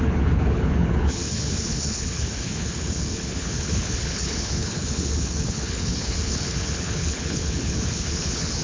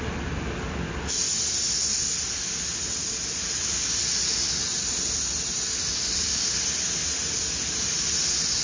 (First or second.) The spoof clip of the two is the first